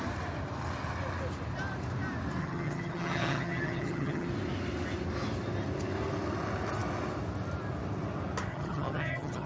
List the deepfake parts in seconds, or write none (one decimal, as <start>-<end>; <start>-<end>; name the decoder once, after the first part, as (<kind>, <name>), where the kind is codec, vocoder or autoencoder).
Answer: 2.4-4.3 (vocoder, HiFi-GAN); 8.5-9.5